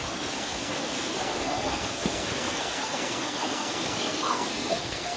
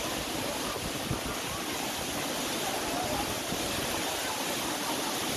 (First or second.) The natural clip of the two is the second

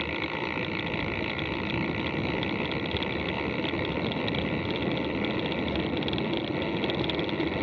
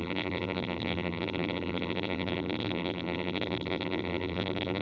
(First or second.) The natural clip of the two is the first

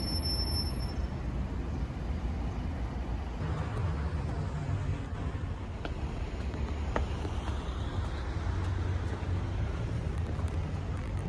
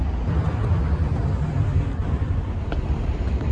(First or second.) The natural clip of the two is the first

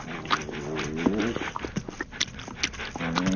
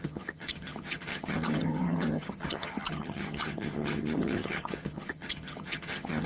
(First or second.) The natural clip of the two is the first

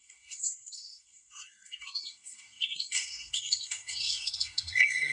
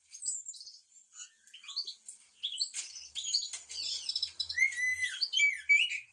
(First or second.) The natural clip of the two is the second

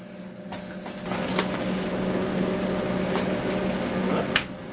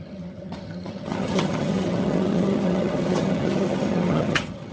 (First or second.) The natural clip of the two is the first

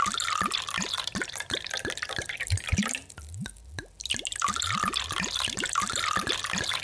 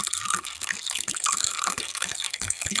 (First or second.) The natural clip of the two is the first